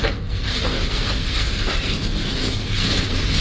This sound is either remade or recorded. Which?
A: remade